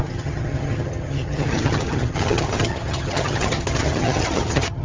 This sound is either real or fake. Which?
fake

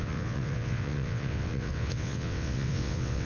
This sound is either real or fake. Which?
fake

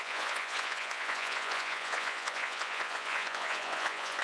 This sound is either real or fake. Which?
fake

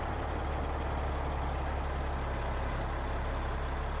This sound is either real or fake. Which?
real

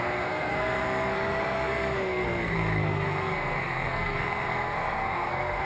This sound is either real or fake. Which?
fake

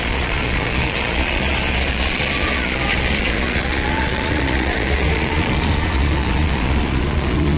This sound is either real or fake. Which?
fake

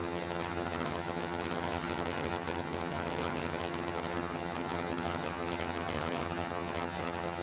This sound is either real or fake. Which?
fake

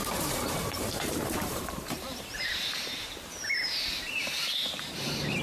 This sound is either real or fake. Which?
fake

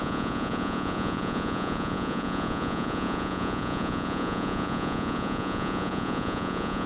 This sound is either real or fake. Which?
fake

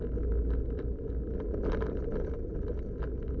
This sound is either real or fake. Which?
real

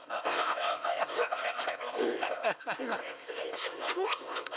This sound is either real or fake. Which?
fake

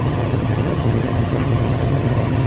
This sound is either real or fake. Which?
fake